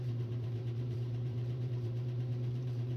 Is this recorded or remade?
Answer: remade